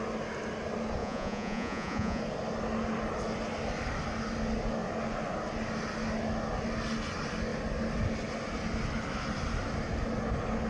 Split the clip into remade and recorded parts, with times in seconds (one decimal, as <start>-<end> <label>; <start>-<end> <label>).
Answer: 0.0-1.0 recorded; 1.0-2.2 remade; 2.2-10.7 recorded

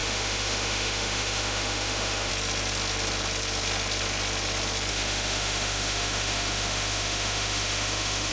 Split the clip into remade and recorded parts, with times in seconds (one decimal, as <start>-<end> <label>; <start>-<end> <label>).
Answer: 0.0-2.3 remade; 2.3-4.9 recorded; 4.9-8.3 remade

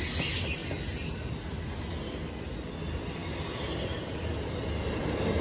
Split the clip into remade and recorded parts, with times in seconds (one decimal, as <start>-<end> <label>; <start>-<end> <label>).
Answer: 0.0-0.6 remade; 0.6-2.8 recorded; 2.8-3.2 remade; 3.2-5.4 recorded